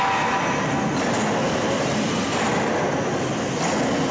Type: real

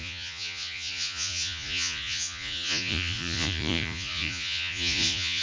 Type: fake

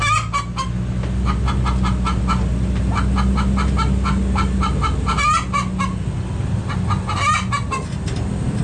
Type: real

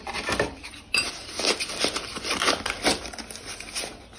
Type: real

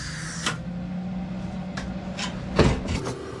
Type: real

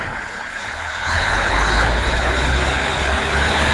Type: fake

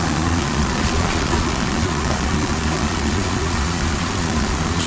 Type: fake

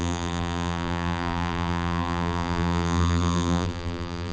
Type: fake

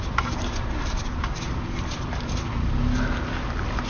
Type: real